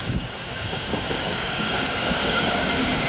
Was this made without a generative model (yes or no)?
no